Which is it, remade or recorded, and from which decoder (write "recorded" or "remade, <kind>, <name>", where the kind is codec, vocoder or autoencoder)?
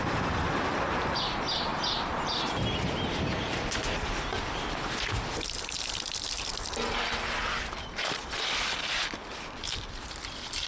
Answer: recorded